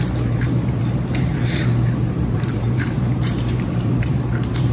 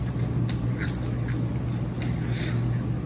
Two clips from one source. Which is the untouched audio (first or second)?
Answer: second